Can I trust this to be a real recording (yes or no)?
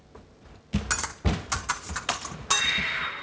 yes